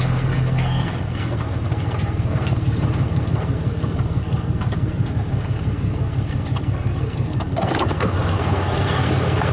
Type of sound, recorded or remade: remade